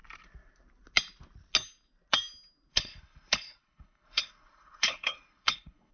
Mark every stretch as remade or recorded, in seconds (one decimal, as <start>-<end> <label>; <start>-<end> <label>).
0.0-2.7 recorded; 2.7-5.9 remade